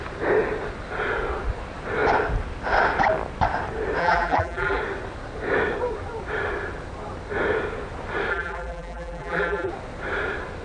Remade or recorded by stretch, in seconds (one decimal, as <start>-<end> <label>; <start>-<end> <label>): 0.0-4.0 recorded; 4.0-4.8 remade; 4.8-8.3 recorded; 8.3-9.7 remade; 9.7-10.6 recorded